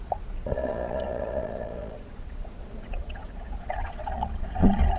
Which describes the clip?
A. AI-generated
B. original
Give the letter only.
A